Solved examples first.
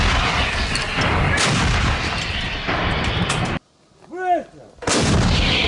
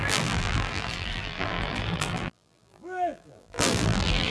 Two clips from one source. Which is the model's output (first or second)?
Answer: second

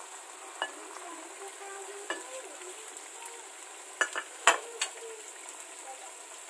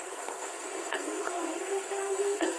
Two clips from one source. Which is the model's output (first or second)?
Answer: second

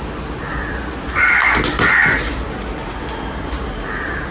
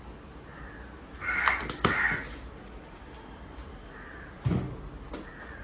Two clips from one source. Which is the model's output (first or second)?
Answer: second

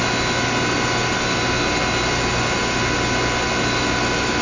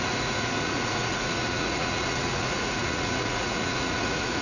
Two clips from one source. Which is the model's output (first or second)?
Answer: second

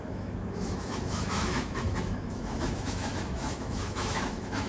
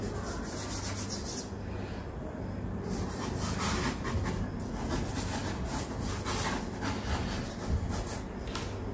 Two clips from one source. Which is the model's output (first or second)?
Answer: first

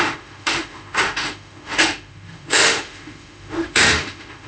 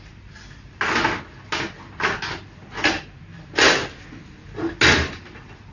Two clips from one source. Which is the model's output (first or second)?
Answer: first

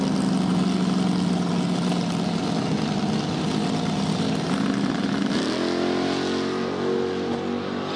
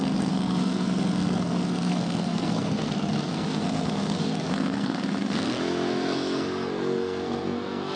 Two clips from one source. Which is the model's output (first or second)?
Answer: second